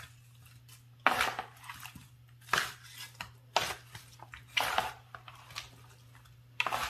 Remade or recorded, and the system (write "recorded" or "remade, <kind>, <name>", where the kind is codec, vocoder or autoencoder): recorded